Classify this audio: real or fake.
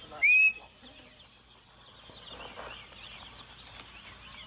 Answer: real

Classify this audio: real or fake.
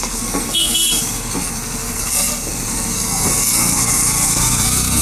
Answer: fake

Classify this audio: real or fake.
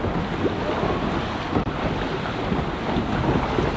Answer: real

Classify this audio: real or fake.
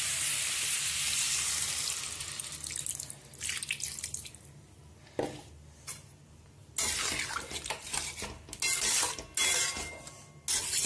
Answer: real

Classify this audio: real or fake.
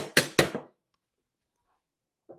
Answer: fake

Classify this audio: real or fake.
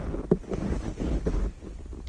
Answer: real